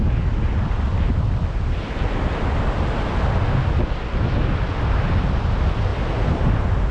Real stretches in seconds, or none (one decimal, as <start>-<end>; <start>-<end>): 0.0-6.9